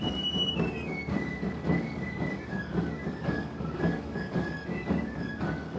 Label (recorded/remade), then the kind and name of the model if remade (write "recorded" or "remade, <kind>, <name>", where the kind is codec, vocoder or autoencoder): remade, codec, DAC